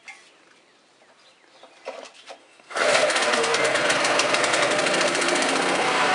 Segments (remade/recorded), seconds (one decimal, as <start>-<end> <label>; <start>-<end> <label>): 0.0-2.4 recorded; 2.4-6.1 remade